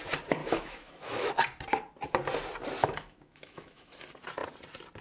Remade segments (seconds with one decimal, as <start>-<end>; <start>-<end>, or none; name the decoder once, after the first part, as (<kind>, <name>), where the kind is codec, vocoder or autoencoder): 0.4-1.3 (autoencoder, DAC-VAE); 2.8-3.9

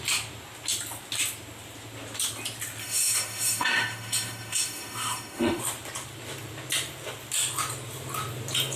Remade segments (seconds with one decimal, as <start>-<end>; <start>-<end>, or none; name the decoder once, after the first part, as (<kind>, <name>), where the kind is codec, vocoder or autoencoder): 2.8-5.6 (autoencoder, DAC-VAE)